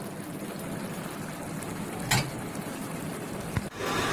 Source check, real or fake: real